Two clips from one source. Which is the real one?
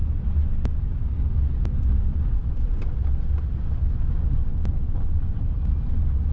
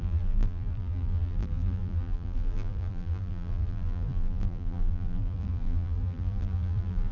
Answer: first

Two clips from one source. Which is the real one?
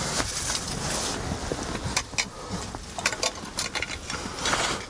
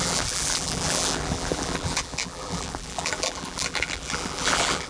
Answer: first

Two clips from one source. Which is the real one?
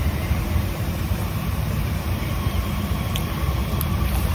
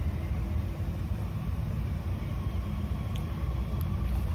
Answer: second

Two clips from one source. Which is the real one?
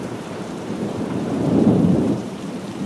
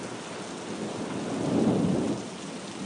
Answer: second